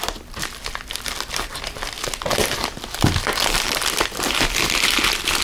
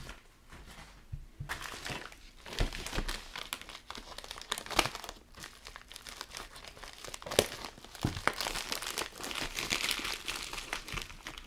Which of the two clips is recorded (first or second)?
second